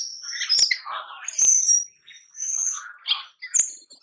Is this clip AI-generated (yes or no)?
no